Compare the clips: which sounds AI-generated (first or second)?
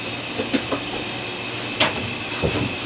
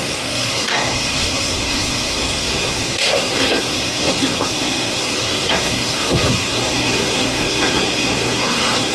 second